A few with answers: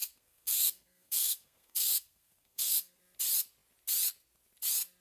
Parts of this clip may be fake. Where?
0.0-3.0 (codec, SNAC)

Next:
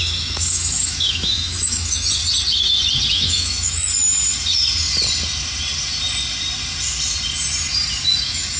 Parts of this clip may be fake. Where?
0.0-2.2 (autoencoder, DAC-VAE); 3.1-3.9; 8.2-8.6